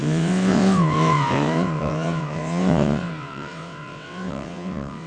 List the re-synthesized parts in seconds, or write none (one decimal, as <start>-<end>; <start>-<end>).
0.0-5.1